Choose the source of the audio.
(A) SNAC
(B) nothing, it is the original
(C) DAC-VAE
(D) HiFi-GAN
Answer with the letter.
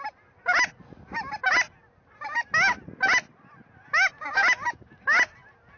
B